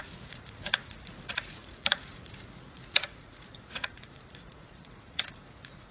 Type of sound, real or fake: fake